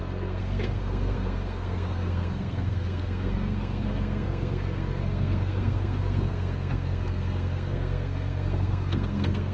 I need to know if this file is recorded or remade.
remade